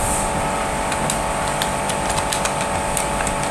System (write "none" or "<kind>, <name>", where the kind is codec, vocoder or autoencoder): none